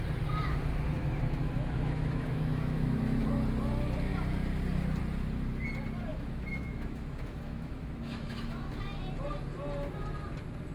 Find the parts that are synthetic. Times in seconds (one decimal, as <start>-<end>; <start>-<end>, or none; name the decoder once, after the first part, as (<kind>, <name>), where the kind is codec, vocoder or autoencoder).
1.0-3.2 (autoencoder, DAC-VAE); 6.1-8.8